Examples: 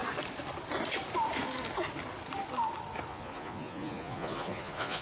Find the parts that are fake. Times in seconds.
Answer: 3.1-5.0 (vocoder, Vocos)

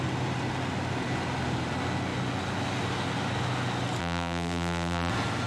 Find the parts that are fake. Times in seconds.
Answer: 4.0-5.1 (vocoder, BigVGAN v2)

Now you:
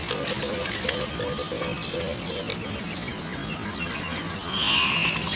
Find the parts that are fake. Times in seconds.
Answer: none

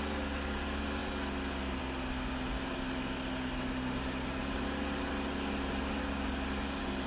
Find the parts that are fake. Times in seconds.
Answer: none